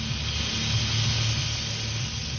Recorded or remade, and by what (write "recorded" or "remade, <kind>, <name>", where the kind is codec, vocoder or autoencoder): recorded